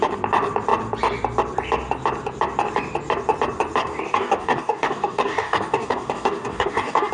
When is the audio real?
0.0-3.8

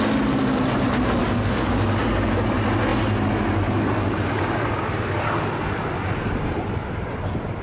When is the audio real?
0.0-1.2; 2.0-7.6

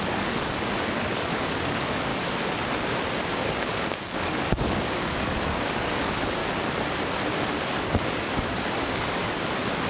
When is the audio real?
2.1-3.4; 6.4-7.3